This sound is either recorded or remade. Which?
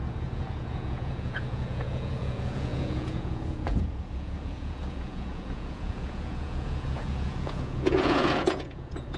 remade